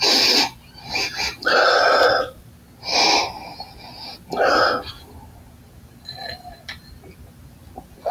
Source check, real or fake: real